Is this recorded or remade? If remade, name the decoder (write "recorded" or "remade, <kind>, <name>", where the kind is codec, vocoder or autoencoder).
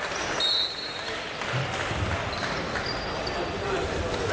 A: remade, vocoder, BigVGAN v2